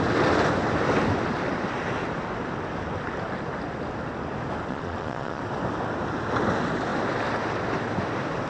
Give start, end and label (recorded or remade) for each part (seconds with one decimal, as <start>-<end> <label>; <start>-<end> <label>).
0.0-4.7 recorded; 4.7-5.4 remade; 5.4-8.5 recorded